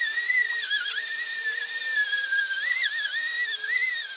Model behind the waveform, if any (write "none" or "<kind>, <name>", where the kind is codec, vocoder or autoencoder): vocoder, BigVGAN v2